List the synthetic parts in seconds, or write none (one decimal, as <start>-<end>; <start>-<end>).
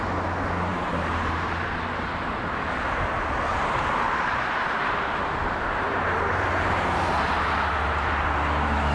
0.7-2.1; 3.5-7.1